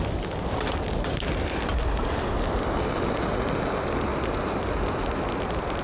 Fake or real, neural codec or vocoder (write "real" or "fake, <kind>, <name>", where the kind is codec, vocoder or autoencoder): real